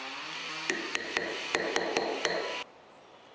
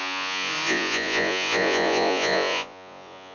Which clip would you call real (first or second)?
first